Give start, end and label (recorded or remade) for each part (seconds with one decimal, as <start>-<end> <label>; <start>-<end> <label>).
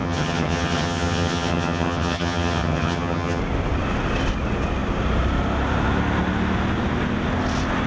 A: 0.0-3.4 remade; 3.4-7.9 recorded